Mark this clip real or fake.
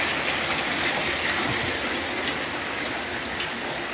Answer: real